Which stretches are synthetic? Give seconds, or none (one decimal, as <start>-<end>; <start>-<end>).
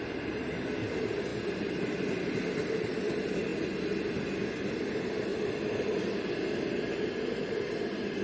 none